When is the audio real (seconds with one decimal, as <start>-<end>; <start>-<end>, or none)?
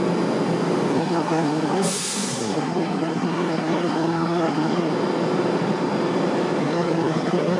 0.0-0.9; 4.9-6.6